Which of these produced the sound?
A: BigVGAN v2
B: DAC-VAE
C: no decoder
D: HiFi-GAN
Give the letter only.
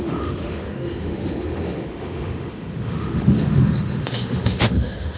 B